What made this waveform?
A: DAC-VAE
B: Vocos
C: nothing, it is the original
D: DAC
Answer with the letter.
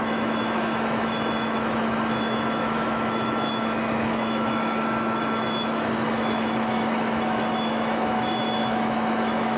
A